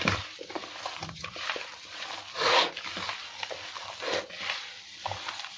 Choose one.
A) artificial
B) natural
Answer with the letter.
B